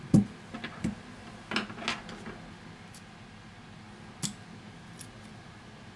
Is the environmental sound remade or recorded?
recorded